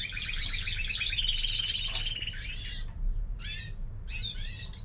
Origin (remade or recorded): recorded